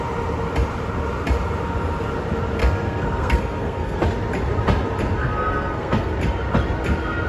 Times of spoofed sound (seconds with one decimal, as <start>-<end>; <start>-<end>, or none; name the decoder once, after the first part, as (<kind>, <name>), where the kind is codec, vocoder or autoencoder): 2.6-4.0 (codec, SNAC); 5.2-6.1